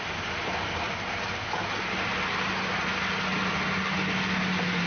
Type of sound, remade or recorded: recorded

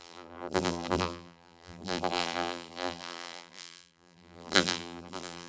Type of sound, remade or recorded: remade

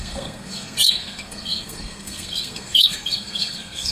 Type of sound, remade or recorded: remade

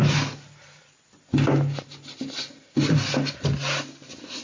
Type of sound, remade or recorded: recorded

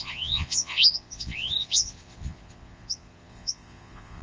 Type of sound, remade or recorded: remade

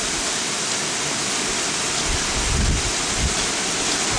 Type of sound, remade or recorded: recorded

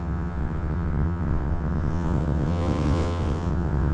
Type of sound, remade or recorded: remade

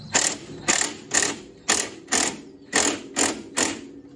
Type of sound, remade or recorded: recorded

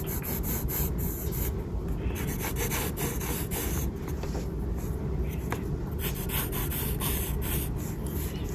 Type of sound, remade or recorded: recorded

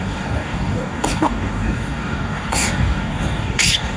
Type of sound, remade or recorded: remade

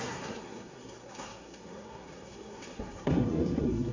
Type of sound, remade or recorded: remade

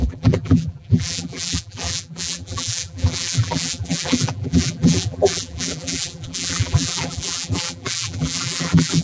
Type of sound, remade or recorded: remade